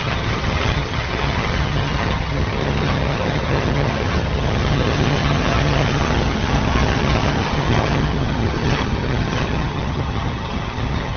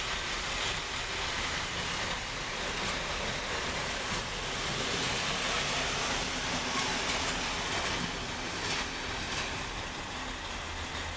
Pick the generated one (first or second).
first